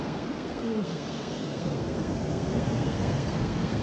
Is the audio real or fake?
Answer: fake